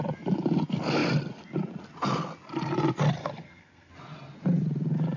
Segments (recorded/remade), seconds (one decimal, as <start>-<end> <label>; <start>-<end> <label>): 0.0-3.2 recorded; 3.2-3.9 remade; 3.9-5.2 recorded

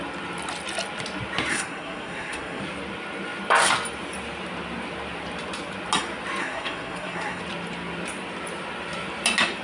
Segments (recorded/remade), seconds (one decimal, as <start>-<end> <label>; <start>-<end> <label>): 0.0-1.5 recorded; 1.5-2.6 remade; 2.6-6.4 recorded; 6.4-7.4 remade; 7.4-9.6 recorded

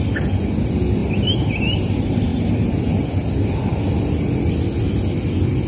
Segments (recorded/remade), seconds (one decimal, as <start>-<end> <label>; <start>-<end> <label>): 0.0-5.7 recorded

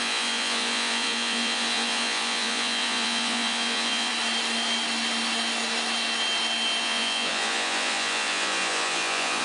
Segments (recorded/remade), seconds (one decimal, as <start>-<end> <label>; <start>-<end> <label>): 0.0-4.1 remade; 4.1-6.8 recorded; 6.8-9.4 remade

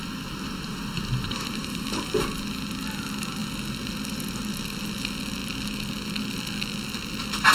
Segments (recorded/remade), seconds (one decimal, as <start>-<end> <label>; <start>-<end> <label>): 0.0-7.5 recorded

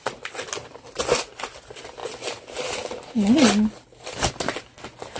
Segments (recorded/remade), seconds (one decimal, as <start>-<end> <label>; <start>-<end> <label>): 0.0-5.2 recorded

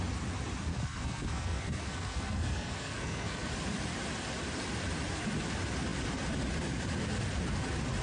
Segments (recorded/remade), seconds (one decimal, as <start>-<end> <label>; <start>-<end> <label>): 0.0-0.7 recorded; 0.7-3.5 remade; 3.5-8.0 recorded